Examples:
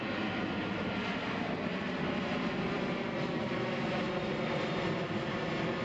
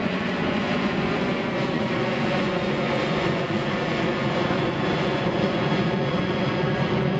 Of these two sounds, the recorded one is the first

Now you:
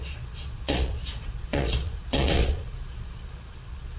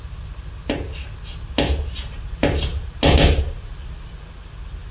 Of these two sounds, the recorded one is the second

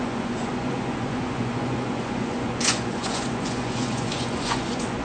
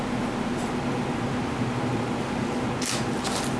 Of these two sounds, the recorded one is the second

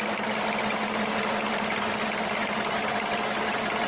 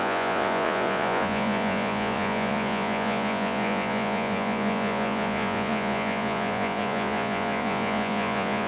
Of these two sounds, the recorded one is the first